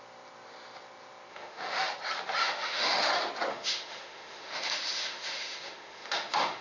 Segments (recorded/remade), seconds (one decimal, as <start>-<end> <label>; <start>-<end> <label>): 0.0-1.3 recorded; 1.3-1.9 remade; 1.9-2.4 recorded; 2.4-3.1 remade; 3.1-3.5 recorded; 3.5-6.6 remade